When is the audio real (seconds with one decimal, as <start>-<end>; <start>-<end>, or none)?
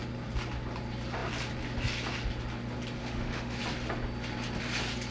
0.0-3.0; 3.6-5.1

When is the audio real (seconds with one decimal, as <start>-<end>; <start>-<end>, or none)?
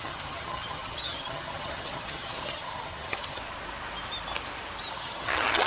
3.4-4.9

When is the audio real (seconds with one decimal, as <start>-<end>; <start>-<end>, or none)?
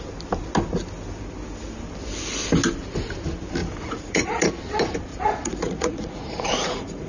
0.0-3.6; 4.5-5.1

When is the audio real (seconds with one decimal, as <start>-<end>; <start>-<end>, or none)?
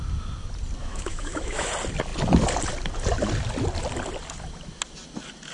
0.0-0.8; 1.7-5.5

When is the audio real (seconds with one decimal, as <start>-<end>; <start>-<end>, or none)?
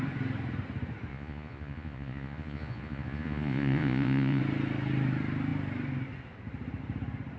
0.0-1.1; 4.4-7.4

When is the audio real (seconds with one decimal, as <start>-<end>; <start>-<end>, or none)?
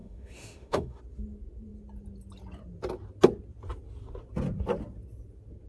1.0-5.7